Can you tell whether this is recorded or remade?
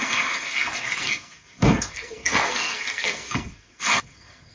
remade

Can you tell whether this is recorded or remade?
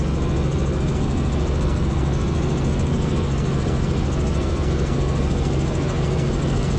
remade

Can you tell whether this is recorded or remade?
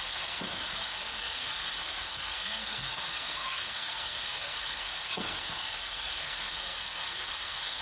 remade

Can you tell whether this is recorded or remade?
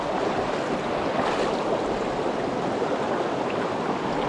recorded